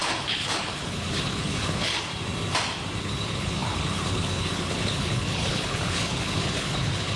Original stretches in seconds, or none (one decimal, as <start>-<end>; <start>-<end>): 2.1-3.0